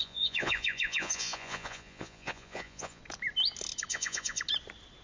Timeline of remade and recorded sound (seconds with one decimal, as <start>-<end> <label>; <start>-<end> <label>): 0.0-3.0 remade; 3.0-3.9 recorded; 3.9-4.4 remade; 4.4-5.0 recorded